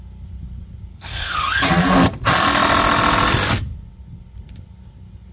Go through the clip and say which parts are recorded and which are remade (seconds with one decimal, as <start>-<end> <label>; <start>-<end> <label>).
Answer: 0.0-0.9 recorded; 0.9-1.6 remade; 1.6-5.3 recorded